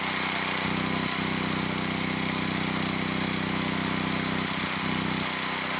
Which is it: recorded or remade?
recorded